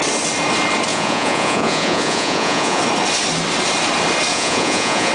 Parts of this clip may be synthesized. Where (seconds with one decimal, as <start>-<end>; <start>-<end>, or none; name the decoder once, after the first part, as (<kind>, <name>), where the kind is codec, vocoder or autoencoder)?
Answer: 0.9-2.8 (vocoder, Vocos); 4.3-5.1